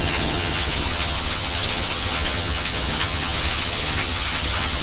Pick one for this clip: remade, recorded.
remade